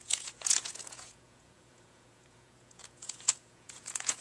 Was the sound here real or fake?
fake